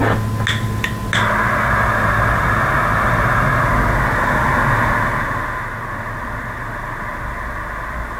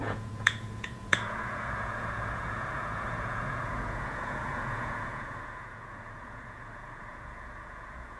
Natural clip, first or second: first